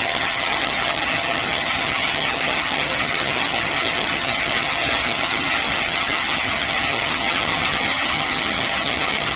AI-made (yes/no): yes